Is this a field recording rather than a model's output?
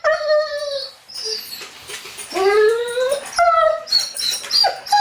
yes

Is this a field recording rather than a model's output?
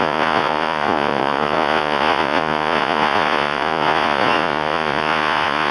no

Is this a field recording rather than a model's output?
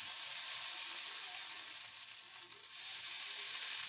yes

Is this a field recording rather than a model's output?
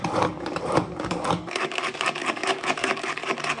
no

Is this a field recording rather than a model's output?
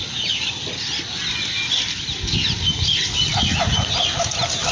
yes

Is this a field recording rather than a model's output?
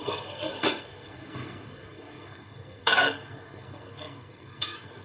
no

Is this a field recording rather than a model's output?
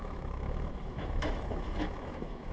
no